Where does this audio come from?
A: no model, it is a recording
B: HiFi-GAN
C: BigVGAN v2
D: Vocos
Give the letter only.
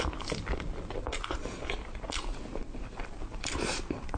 A